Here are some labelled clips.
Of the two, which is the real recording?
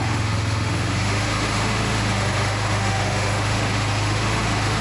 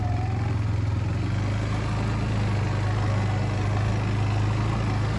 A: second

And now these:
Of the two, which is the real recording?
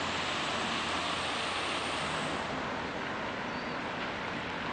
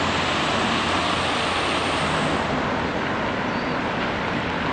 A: first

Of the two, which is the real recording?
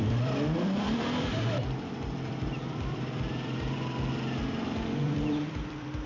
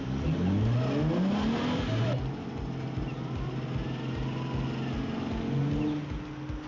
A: second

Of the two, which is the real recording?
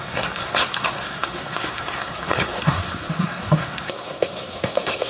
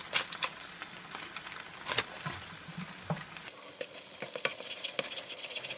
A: second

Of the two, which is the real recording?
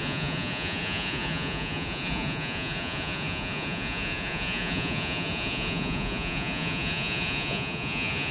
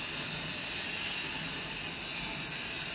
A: second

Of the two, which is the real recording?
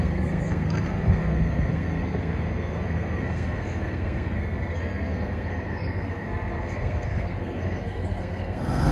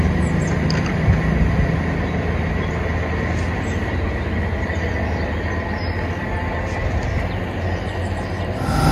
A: second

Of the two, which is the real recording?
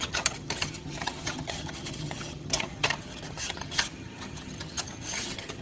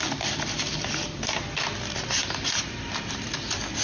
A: second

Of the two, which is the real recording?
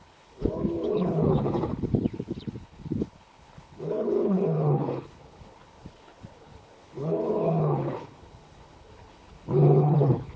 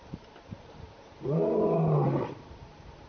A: second